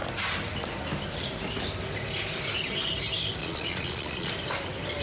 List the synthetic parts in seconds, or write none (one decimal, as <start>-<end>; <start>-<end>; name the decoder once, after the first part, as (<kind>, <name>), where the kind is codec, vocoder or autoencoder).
3.4-4.3 (vocoder, Vocos)